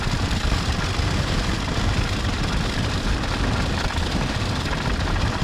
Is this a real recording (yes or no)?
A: no